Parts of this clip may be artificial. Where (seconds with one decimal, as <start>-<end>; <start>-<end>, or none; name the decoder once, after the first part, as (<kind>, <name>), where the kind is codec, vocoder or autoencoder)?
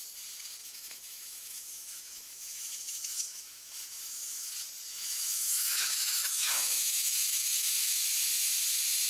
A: 0.6-4.5 (autoencoder, DAC-VAE); 4.9-8.0